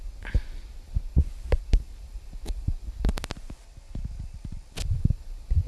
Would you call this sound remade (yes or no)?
no